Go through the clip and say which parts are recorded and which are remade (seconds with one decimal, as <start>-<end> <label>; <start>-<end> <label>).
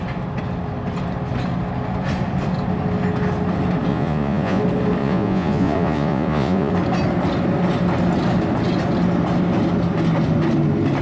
0.0-3.9 recorded; 3.9-4.6 remade; 4.6-5.0 recorded; 5.0-6.7 remade; 6.7-11.0 recorded